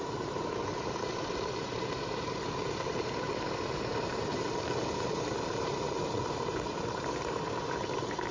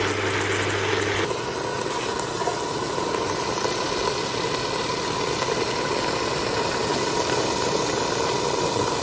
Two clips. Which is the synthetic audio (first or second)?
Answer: first